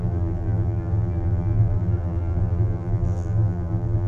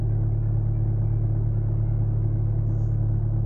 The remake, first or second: first